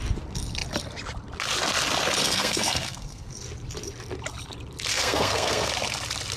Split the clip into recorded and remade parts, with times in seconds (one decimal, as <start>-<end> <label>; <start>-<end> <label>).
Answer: 0.0-2.2 recorded; 2.2-3.3 remade; 3.3-4.9 recorded; 4.9-5.7 remade; 5.7-6.4 recorded